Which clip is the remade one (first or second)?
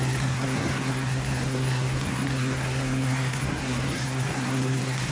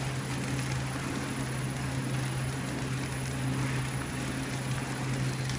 first